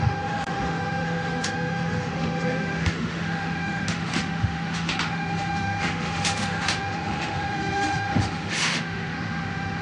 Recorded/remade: remade